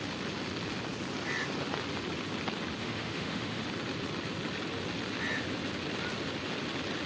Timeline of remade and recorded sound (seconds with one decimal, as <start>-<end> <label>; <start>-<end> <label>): 0.0-2.8 recorded; 2.8-3.6 remade; 3.6-7.1 recorded